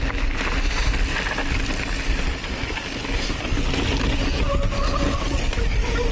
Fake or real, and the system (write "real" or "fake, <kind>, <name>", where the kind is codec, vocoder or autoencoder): real